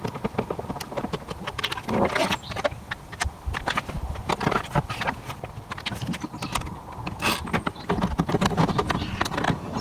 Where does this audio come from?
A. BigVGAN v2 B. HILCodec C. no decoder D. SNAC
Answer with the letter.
C